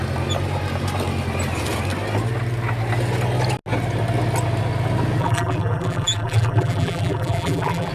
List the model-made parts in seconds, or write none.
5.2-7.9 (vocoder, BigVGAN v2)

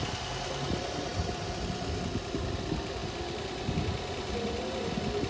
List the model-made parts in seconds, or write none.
none

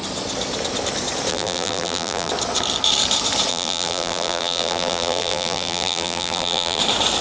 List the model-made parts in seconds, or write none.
1.3-2.3 (vocoder, BigVGAN v2); 3.5-6.8